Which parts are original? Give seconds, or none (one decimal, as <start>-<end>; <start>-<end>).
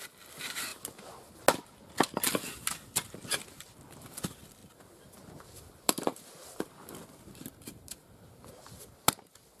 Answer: 0.0-0.7; 1.3-4.6; 8.5-9.6